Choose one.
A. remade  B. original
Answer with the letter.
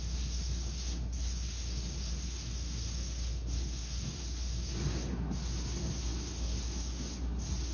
A